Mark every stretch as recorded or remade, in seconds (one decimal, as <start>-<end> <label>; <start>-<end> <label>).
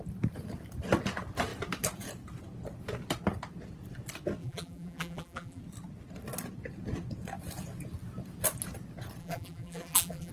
0.0-4.4 recorded; 4.4-5.6 remade; 5.6-9.2 recorded; 9.2-10.3 remade